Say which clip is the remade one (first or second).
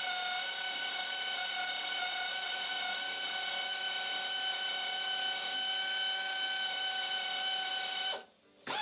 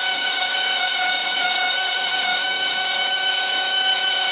second